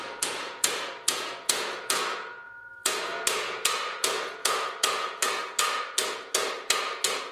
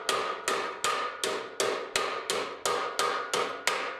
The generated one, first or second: first